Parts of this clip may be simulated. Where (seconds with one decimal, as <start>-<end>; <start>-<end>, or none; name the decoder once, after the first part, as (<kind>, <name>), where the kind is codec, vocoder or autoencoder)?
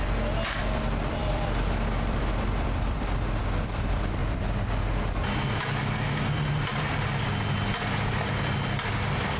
0.5-4.2 (vocoder, BigVGAN v2); 8.0-9.4